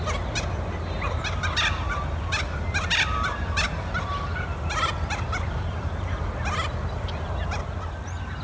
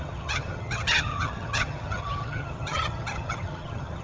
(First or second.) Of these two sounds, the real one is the first